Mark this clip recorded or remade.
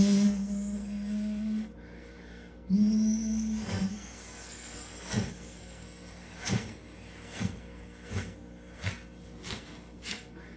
remade